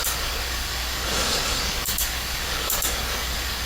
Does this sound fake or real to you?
fake